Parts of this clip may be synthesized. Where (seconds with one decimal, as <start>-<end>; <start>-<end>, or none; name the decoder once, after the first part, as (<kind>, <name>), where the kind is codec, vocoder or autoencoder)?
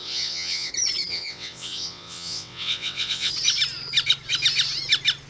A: 0.0-0.7 (vocoder, WaveNeXt); 1.1-3.3